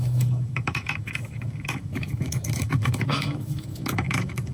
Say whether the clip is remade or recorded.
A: remade